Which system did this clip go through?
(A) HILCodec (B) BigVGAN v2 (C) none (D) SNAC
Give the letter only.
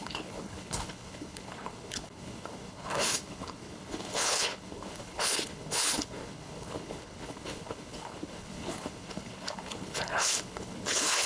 A